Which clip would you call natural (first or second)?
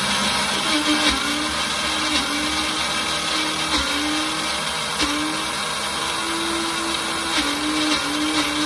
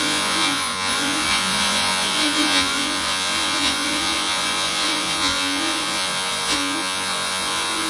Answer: first